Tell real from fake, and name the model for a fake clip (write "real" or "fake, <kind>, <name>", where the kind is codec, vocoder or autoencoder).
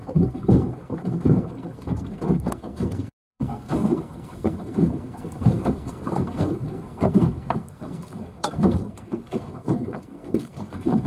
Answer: fake, codec, SNAC